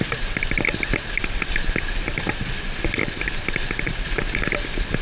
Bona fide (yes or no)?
yes